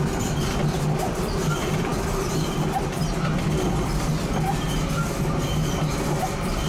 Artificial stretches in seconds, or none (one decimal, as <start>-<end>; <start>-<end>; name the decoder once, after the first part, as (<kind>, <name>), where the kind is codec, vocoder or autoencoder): none